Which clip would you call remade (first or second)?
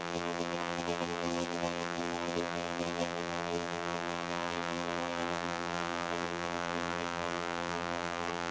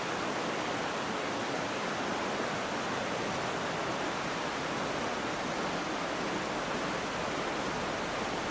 first